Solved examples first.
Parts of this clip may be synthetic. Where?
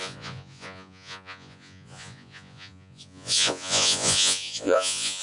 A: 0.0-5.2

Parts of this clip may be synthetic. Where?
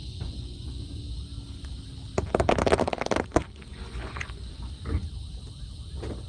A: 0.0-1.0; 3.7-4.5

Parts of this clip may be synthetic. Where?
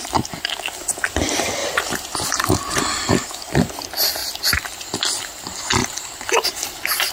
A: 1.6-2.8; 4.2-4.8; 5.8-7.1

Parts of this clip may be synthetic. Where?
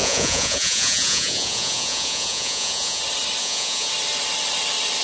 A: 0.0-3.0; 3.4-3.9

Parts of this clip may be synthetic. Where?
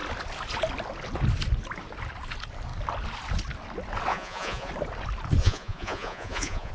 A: 4.1-4.7; 5.4-6.7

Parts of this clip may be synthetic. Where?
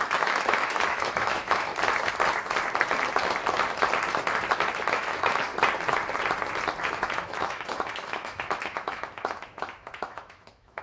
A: 0.0-1.7; 4.9-5.5; 6.9-10.8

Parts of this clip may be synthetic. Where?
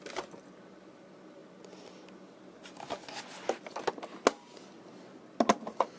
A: none